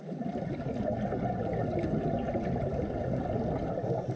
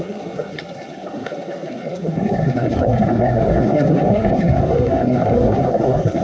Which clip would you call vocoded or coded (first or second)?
second